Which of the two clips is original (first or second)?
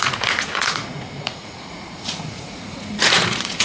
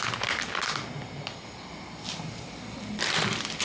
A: second